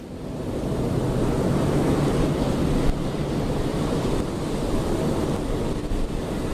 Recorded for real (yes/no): yes